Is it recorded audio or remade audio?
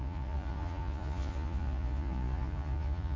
remade